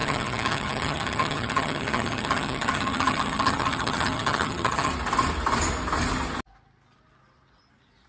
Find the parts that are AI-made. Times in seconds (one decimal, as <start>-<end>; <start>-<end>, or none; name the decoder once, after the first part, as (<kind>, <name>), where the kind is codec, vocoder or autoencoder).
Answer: 0.0-4.9 (vocoder, HiFi-GAN)